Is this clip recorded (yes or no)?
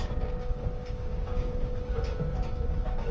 no